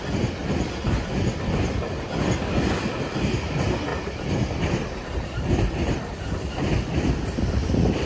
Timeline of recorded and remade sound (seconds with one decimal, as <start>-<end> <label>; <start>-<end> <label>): 0.0-3.9 recorded; 3.9-6.4 remade; 6.4-7.6 recorded; 7.6-8.1 remade